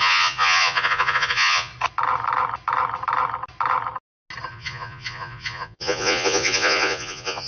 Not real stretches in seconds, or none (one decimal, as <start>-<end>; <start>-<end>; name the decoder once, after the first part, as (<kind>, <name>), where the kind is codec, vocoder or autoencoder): 0.0-1.7 (vocoder, Vocos); 4.5-7.5